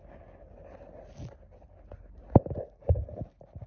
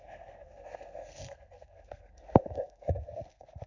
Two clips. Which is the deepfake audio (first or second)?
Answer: second